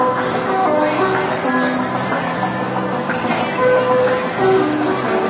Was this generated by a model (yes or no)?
no